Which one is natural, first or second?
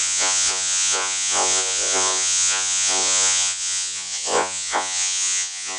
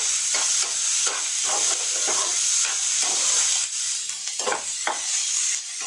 second